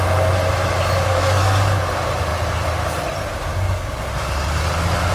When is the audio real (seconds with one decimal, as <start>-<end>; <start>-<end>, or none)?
0.0-1.1; 1.8-3.5; 4.0-5.1